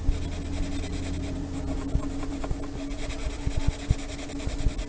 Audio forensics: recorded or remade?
recorded